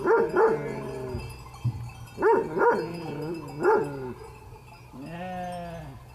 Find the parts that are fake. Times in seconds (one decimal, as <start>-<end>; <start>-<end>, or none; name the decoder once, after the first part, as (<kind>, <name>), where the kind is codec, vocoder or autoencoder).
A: none